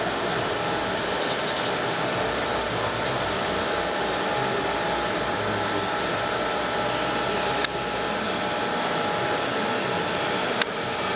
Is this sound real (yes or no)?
yes